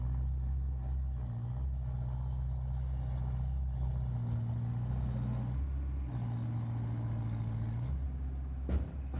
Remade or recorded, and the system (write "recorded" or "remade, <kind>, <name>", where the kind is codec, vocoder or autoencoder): recorded